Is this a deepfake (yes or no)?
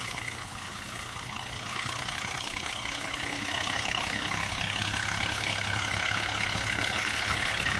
yes